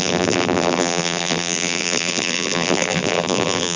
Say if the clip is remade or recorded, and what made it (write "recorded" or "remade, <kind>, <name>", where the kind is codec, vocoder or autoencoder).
remade, vocoder, BigVGAN v2